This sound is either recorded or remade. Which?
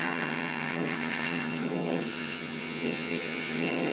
remade